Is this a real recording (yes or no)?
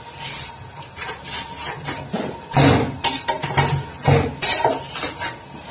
yes